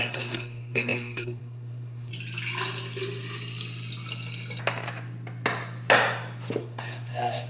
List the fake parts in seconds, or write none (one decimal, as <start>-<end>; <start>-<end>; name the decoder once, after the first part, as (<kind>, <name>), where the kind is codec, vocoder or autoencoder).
0.0-2.1 (codec, SNAC); 6.6-7.5